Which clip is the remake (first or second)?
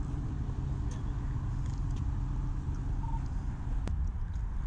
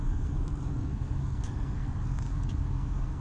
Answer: second